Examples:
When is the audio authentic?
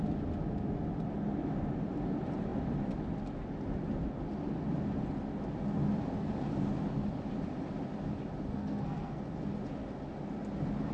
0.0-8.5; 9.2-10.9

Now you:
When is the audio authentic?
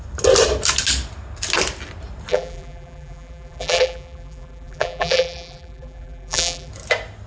0.0-2.3; 6.7-7.3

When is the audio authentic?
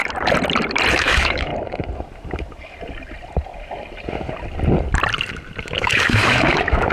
0.0-0.9; 1.5-5.6